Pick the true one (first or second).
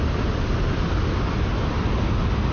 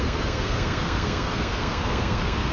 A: first